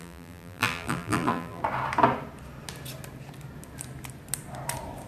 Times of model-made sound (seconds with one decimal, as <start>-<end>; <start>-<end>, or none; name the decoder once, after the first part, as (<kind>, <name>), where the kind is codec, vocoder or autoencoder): 0.0-1.6 (vocoder, BigVGAN v2)